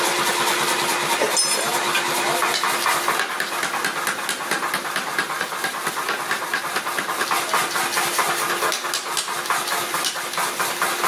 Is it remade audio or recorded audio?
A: recorded